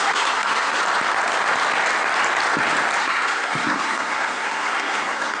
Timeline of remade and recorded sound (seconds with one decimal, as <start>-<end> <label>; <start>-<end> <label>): 0.0-0.8 remade; 0.8-3.0 recorded; 3.0-5.4 remade